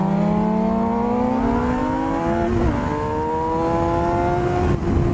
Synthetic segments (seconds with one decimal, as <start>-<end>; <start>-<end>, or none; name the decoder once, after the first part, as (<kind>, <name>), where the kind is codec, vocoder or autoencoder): none